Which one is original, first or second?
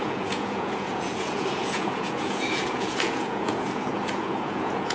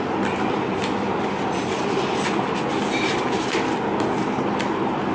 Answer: second